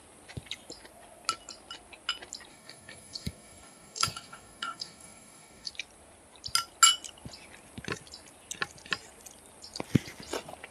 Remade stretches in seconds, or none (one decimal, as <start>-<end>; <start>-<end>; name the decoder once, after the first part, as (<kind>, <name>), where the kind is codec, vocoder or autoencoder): 2.5-5.7 (codec, DAC)